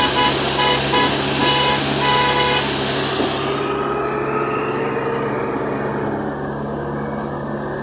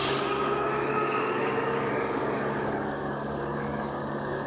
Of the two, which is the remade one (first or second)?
second